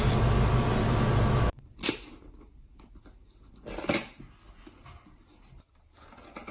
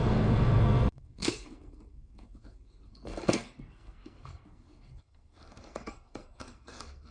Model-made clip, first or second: second